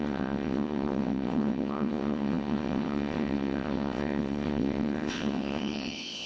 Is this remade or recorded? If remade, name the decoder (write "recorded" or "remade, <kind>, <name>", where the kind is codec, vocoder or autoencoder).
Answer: remade, vocoder, WaveNeXt